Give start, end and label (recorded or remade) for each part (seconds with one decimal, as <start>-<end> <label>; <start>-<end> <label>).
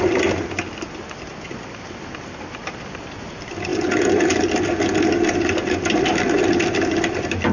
0.0-7.5 recorded